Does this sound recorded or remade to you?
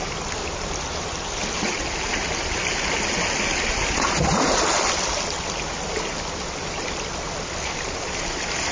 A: recorded